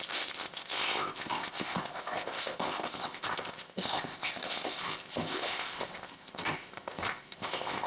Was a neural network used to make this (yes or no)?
yes